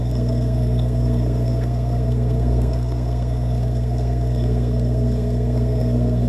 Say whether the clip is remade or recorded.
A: remade